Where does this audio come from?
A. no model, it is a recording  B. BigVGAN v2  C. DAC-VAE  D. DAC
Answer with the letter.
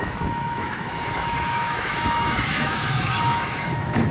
C